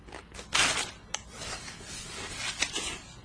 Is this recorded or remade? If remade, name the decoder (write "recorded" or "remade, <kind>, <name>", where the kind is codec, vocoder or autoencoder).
recorded